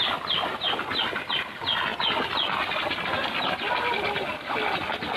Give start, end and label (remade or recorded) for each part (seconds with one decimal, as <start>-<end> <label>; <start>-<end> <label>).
0.0-5.2 recorded